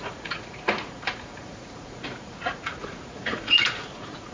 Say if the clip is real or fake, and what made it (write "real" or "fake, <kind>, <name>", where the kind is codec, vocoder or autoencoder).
fake, vocoder, Vocos